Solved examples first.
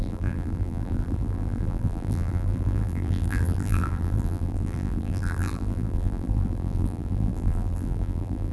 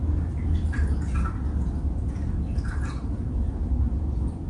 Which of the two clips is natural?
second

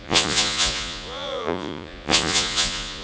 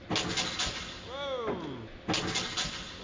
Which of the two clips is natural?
second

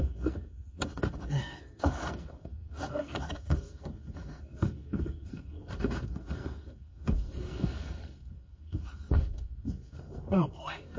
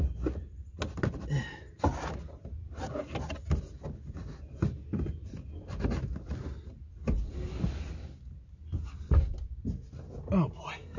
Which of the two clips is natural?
second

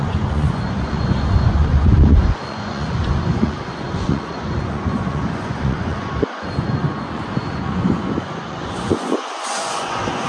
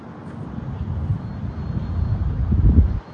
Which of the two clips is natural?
second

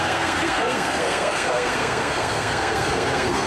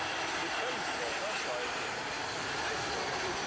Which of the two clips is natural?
second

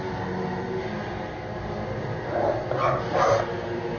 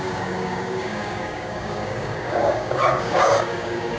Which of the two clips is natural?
first